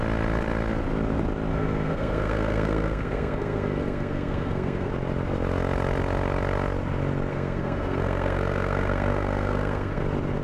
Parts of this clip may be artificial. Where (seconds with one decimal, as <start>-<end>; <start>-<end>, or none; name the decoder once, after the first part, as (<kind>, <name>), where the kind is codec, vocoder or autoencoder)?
1.5-4.9 (codec, SNAC); 7.3-10.0